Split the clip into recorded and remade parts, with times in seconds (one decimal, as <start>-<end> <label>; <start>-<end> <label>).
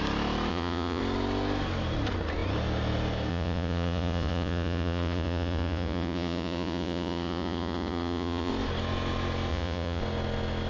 0.0-0.5 recorded; 0.5-1.0 remade; 1.0-3.3 recorded; 3.3-8.5 remade; 8.5-9.5 recorded; 9.5-10.0 remade; 10.0-10.7 recorded